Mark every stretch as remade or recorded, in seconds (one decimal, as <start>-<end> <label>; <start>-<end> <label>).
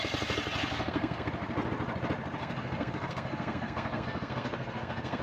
0.0-0.7 recorded; 0.7-1.3 remade; 1.3-2.4 recorded; 2.4-5.2 remade